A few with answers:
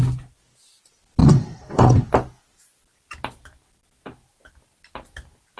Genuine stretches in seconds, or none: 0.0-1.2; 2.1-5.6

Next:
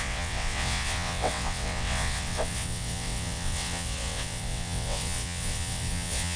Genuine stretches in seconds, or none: none

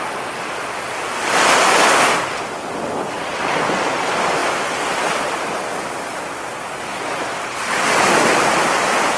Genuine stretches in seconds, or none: 0.0-9.2

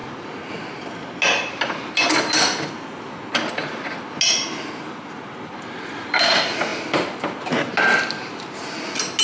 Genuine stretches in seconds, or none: 0.0-9.2

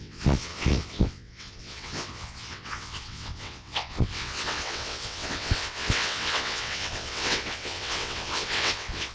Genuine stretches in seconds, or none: none

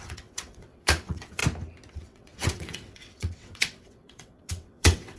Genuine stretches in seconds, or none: 1.4-1.9

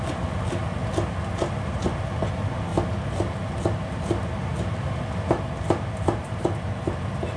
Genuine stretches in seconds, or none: 0.0-7.4

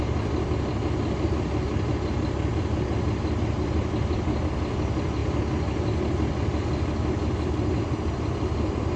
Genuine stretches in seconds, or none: 0.0-9.0